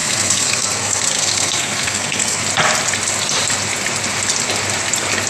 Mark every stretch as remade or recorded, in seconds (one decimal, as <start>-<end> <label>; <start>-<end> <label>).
0.0-2.4 remade; 2.4-5.3 recorded

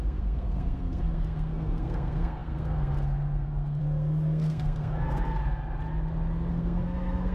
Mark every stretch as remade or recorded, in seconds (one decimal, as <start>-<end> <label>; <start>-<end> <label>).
0.0-5.4 remade; 5.4-6.5 recorded; 6.5-7.3 remade

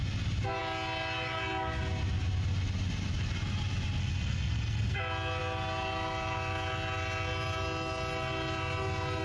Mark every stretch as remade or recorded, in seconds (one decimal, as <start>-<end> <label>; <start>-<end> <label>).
0.0-4.0 recorded; 4.0-5.0 remade; 5.0-9.2 recorded

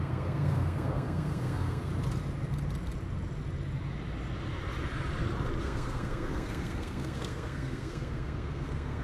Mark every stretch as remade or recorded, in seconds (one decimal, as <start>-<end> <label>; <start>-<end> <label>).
0.0-1.9 remade; 1.9-5.6 recorded; 5.6-9.0 remade

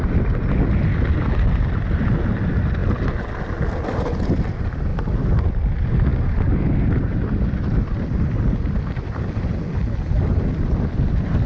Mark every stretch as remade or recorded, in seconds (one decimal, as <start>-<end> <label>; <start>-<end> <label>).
0.0-11.5 recorded

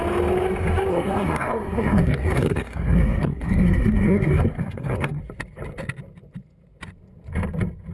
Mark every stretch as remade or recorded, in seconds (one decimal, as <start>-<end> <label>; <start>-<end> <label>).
0.0-0.9 recorded; 0.9-5.2 remade; 5.2-7.9 recorded

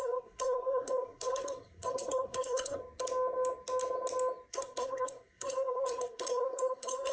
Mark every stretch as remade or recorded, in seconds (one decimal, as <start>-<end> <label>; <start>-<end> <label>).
0.0-2.8 remade; 2.8-4.5 recorded; 4.5-7.1 remade

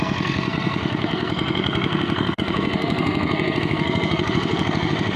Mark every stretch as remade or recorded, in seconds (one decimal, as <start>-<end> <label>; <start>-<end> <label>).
0.0-5.2 remade